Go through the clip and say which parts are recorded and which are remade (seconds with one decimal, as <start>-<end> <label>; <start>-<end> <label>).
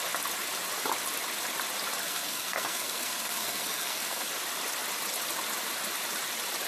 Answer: 0.0-2.0 recorded; 2.0-4.3 remade; 4.3-6.7 recorded